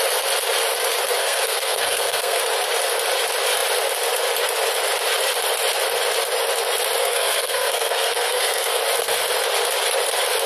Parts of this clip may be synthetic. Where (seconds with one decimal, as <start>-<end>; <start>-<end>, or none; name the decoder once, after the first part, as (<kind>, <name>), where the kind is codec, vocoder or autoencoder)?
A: 1.2-2.4 (codec, SNAC); 7.0-8.8